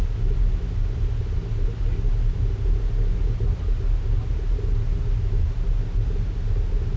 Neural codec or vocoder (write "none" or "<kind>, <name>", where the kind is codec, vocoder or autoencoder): none